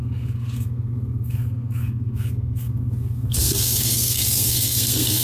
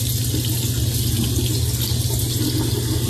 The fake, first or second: first